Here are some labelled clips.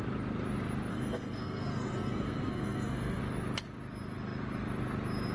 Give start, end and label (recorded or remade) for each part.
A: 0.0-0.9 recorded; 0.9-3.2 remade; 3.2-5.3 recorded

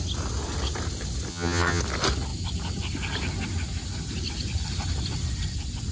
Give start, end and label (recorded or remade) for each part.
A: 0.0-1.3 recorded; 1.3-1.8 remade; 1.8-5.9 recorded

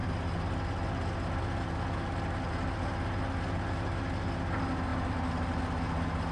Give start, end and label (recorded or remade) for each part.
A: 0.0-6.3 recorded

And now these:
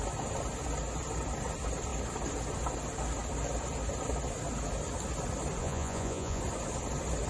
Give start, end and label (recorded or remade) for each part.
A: 0.0-5.6 recorded; 5.6-6.4 remade; 6.4-7.3 recorded

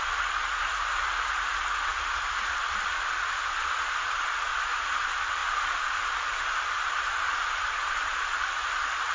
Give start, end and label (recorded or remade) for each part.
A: 0.0-9.1 recorded

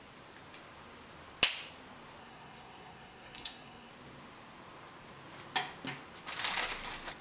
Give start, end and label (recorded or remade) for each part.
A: 0.0-2.2 recorded; 2.2-3.9 remade; 3.9-7.2 recorded

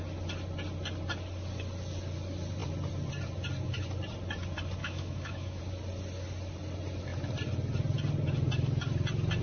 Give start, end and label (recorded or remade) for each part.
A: 0.0-4.8 recorded; 4.8-5.6 remade; 5.6-9.4 recorded